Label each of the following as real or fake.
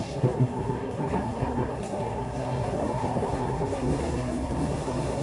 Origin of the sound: fake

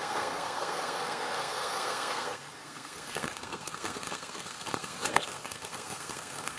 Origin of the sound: fake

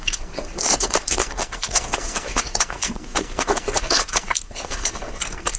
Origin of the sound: fake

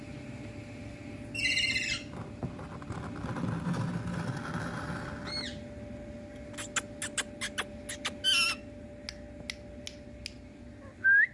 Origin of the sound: real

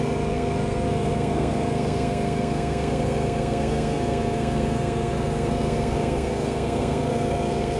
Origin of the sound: fake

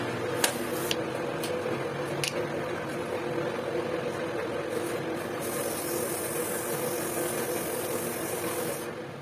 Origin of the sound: real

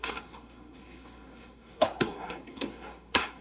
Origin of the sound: fake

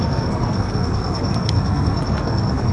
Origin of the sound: fake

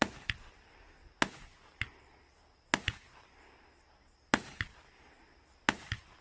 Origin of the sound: real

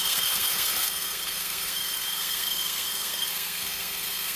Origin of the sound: fake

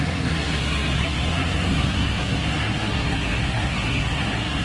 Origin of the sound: fake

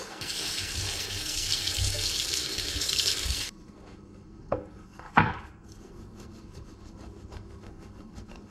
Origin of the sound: fake